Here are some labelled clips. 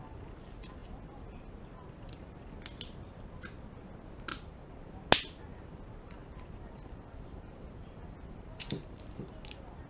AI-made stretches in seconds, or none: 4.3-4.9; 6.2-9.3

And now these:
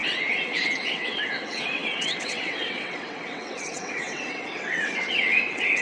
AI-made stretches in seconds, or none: 0.0-5.8